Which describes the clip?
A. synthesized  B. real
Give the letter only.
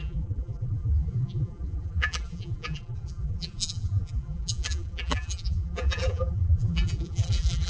A